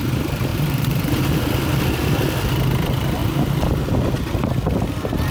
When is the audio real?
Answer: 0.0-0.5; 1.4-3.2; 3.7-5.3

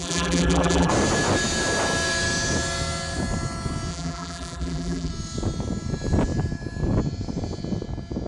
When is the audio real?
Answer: 0.9-3.9; 5.1-8.3

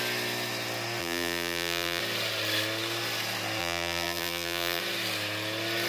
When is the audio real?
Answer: 0.0-1.0; 2.0-3.6; 4.8-5.9

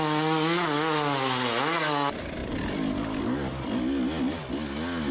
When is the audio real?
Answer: 0.0-5.1

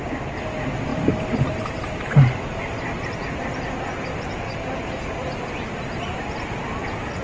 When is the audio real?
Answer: 0.0-0.9; 3.3-7.2